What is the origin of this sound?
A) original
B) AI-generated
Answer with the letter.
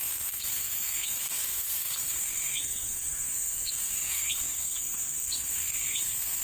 B